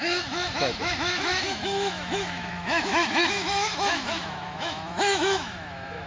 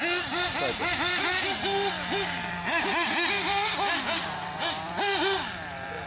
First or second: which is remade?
first